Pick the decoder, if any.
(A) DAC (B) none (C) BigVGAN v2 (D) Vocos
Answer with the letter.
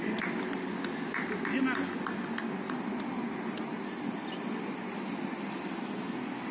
B